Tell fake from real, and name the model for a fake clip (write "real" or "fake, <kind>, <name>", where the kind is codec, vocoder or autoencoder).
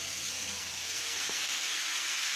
fake, codec, SNAC